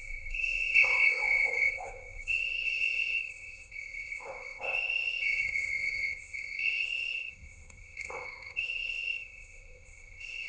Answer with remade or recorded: remade